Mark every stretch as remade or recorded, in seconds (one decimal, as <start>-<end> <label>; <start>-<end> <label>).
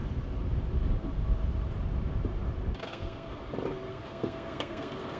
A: 0.0-2.8 recorded; 2.8-3.4 remade; 3.4-3.9 recorded; 3.9-5.2 remade